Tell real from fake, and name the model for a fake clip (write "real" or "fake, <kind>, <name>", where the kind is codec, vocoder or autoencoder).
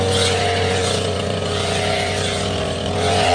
fake, vocoder, Vocos